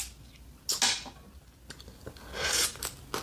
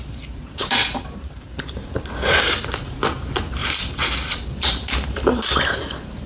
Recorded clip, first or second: first